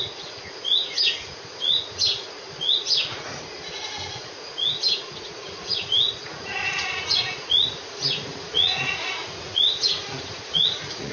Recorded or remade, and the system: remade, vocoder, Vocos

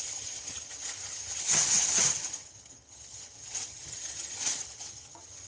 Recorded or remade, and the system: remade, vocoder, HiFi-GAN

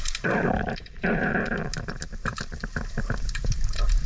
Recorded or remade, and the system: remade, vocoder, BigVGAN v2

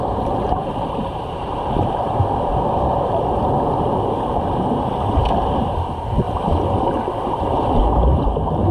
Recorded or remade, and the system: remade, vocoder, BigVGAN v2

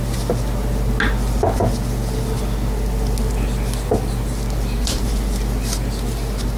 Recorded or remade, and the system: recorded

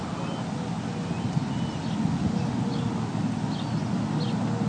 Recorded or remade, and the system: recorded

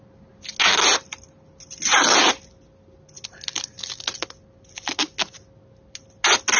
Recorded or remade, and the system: recorded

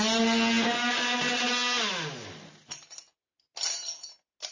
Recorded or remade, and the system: recorded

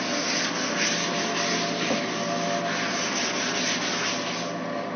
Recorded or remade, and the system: recorded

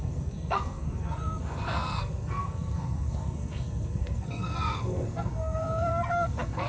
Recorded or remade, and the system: remade, codec, SNAC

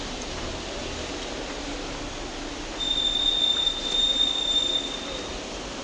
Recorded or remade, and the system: recorded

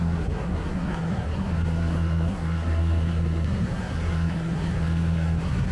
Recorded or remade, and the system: remade, codec, SNAC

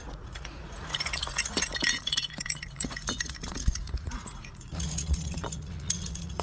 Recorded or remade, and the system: remade, vocoder, Vocos